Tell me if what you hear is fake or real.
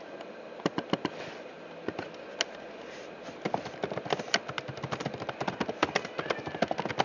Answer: real